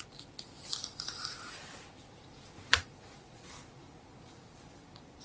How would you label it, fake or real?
fake